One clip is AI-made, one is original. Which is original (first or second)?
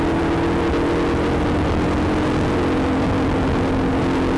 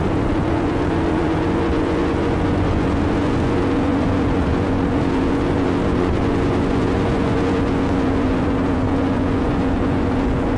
first